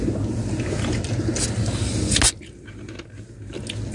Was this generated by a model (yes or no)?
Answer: no